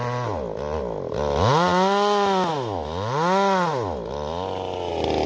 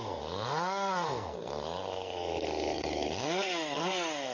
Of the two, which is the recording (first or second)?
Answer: first